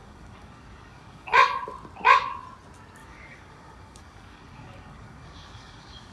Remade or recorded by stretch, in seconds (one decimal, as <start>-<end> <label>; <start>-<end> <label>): 0.0-1.3 remade; 1.3-3.0 recorded; 3.0-6.1 remade